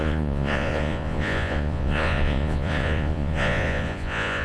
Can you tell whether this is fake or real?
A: fake